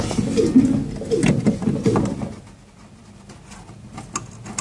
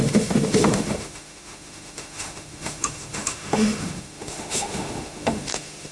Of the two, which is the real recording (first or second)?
first